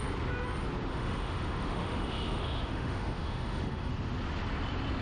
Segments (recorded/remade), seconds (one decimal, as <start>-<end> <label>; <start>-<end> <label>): 0.0-0.9 recorded; 0.9-3.9 remade; 3.9-5.0 recorded